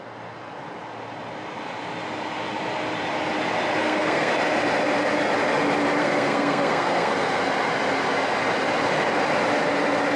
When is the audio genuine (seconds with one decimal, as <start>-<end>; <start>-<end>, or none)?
0.0-3.8; 4.3-6.0; 7.4-10.2